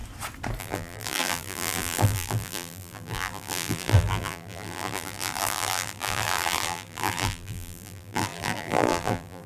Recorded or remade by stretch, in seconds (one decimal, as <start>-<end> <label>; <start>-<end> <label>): 0.0-0.6 recorded; 0.6-9.5 remade